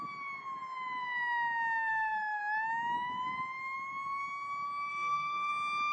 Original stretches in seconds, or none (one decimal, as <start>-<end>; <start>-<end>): 0.0-1.9; 2.4-4.9; 5.5-5.9